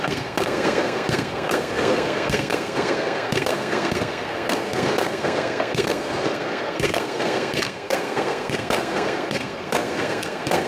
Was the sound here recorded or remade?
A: remade